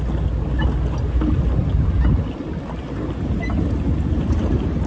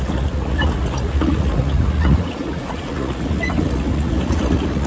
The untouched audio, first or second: first